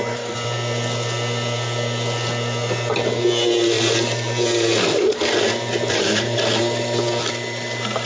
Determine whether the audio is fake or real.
real